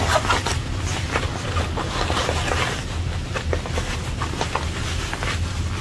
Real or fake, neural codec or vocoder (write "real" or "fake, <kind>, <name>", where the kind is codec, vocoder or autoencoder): real